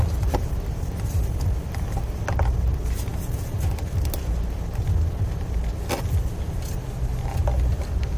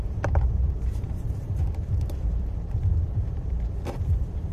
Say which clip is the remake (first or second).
second